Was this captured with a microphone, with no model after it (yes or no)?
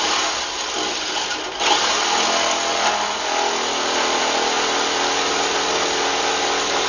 yes